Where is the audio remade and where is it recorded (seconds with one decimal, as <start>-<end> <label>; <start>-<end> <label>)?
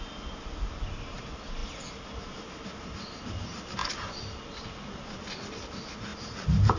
0.0-6.8 recorded